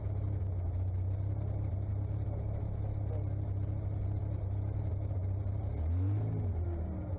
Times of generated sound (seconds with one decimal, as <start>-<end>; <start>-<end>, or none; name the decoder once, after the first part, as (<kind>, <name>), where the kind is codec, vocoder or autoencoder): none